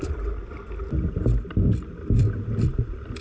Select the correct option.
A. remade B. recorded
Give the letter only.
B